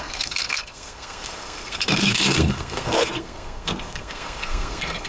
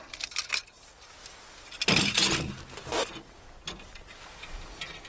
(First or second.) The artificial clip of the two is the first